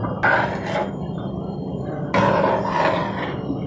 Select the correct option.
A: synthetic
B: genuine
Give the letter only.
B